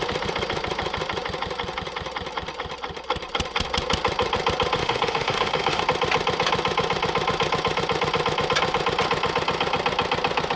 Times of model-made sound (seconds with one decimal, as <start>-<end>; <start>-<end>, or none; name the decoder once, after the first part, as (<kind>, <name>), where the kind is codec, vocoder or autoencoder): 4.8-5.8 (autoencoder, DAC-VAE)